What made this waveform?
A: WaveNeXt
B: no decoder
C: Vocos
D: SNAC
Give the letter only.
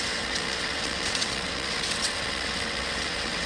A